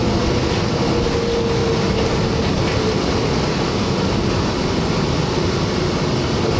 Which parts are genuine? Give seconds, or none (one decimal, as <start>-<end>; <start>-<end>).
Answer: 0.0-6.6